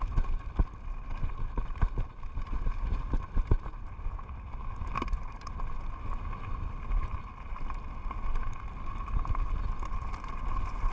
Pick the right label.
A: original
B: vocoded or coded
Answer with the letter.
A